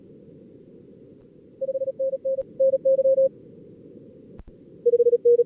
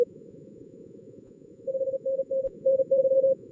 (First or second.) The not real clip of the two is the second